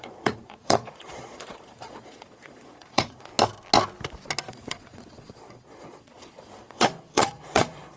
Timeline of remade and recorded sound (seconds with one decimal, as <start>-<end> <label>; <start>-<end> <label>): 0.0-3.3 remade; 3.3-4.5 recorded; 4.5-8.0 remade